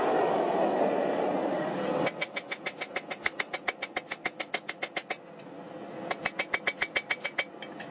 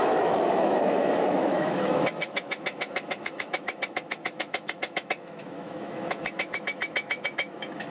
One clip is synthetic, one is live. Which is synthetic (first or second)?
second